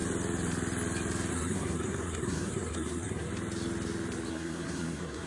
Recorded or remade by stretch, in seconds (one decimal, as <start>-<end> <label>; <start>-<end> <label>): 0.0-1.3 recorded; 1.3-3.3 remade; 3.3-4.3 recorded; 4.3-5.3 remade